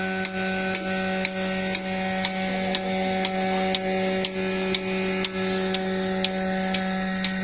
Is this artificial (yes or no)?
no